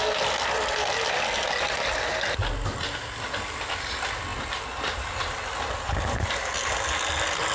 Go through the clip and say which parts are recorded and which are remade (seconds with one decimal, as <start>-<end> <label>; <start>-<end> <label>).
0.0-7.5 recorded